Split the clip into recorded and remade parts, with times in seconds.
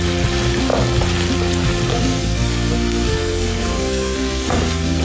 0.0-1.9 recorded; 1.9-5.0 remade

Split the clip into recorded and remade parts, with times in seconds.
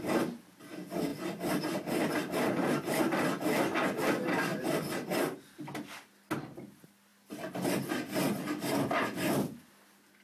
0.0-10.2 recorded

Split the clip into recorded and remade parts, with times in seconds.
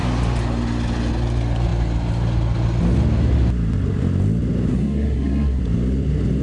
0.0-4.7 recorded; 4.7-5.6 remade; 5.6-6.4 recorded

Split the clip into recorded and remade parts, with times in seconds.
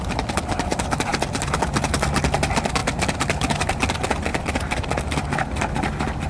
0.0-6.3 recorded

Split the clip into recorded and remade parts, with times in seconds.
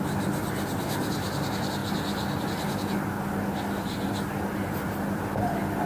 0.0-5.9 recorded